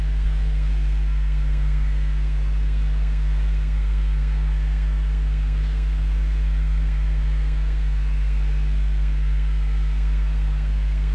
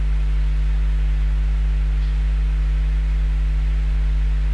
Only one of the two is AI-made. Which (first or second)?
first